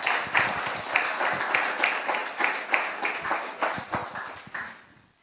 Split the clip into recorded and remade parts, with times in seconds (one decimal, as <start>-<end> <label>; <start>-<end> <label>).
0.0-5.2 recorded